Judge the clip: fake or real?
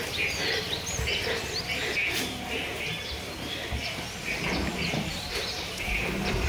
real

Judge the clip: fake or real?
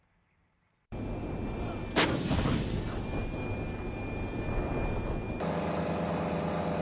real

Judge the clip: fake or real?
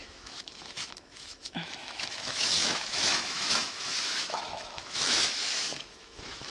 fake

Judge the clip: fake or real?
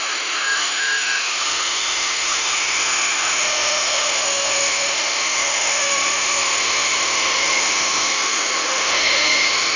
fake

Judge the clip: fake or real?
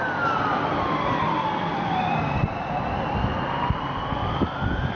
real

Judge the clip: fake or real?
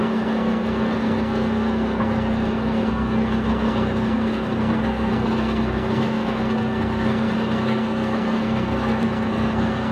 fake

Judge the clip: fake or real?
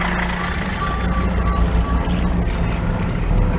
real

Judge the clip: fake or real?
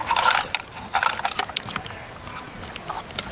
real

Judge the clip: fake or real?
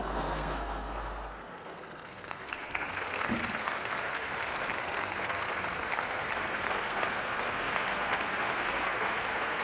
fake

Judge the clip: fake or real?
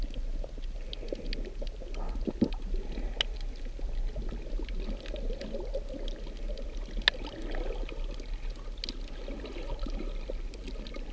real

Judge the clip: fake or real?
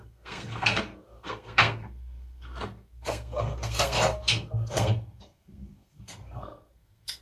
fake